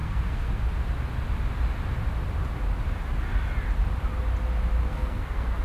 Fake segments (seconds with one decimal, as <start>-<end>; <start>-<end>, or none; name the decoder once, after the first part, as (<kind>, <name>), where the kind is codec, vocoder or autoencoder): 0.0-0.6 (codec, SNAC); 4.8-5.6